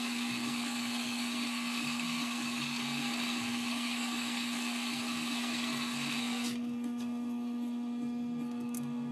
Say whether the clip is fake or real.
fake